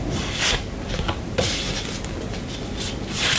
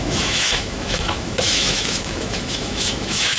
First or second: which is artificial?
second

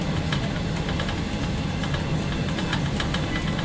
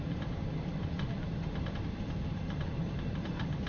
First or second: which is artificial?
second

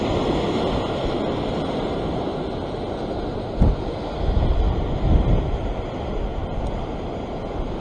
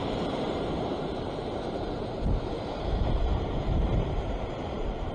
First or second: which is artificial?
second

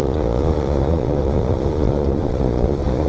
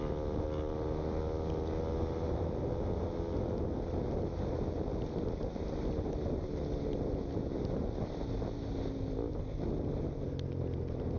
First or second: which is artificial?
first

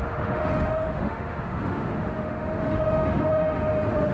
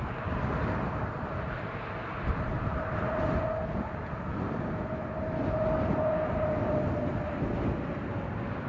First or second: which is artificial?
first